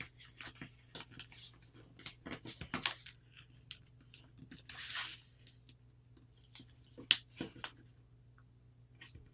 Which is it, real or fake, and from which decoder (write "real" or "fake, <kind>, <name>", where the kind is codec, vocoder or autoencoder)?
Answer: real